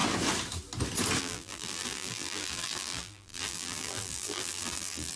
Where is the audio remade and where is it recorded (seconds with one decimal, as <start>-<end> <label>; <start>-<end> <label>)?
0.0-1.2 recorded; 1.2-5.2 remade